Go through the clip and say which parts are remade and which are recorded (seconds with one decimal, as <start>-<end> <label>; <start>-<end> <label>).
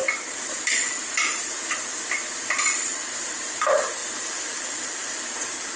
0.0-5.8 recorded